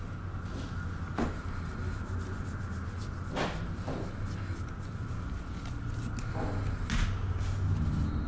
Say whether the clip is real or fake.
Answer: real